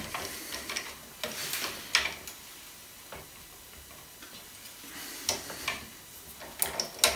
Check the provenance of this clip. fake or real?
real